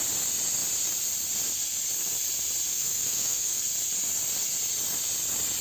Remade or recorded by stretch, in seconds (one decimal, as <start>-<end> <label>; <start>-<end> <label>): 0.0-2.7 recorded; 2.7-3.6 remade; 3.6-5.6 recorded